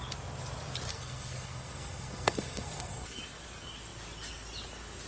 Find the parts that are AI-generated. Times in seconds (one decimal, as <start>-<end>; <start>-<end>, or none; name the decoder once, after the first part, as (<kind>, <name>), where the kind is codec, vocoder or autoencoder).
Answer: 0.9-3.2 (codec, SNAC)